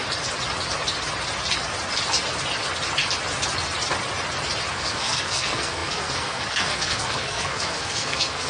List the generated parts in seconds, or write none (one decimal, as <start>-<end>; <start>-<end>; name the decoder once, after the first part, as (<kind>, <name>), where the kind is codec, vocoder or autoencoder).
4.7-8.5 (codec, SNAC)